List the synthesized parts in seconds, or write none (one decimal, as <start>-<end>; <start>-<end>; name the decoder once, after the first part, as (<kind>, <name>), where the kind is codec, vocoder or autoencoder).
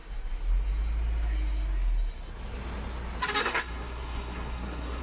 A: 3.4-5.0 (codec, SNAC)